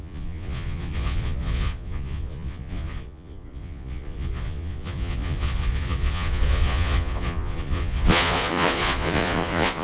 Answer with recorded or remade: remade